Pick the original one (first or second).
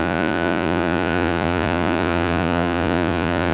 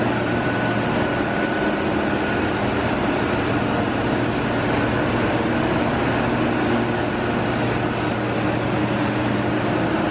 second